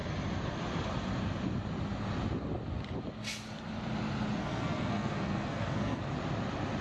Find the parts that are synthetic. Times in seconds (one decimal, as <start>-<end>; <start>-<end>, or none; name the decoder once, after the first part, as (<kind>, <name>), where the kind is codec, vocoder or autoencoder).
4.4-6.0 (codec, SNAC)